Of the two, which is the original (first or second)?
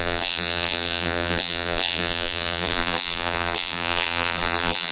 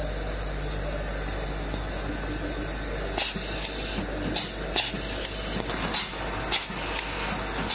second